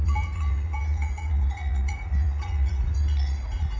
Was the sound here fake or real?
fake